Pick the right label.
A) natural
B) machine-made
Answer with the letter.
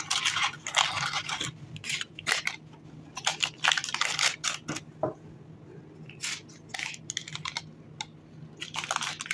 A